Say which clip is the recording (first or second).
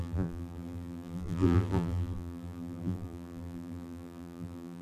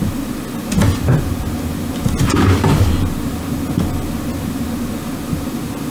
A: second